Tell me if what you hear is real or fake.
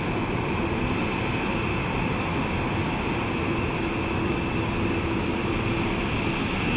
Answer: real